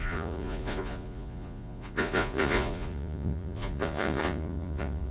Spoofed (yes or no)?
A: yes